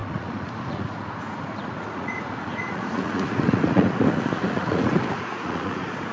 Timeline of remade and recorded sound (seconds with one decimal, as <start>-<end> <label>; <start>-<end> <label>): 0.0-6.1 remade